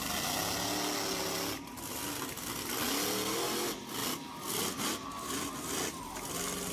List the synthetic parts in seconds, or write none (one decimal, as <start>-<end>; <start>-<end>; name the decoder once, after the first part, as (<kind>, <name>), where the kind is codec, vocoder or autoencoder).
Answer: none